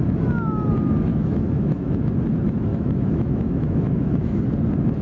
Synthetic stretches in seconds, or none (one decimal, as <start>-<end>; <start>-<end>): 1.1-1.9; 2.7-4.4